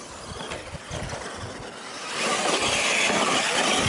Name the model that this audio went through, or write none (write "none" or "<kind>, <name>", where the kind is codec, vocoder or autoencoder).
none